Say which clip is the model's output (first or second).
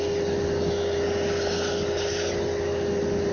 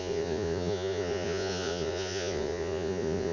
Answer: second